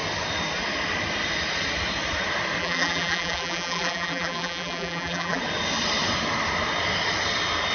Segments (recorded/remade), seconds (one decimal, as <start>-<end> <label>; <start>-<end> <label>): 0.0-2.6 recorded; 2.6-5.4 remade; 5.4-7.7 recorded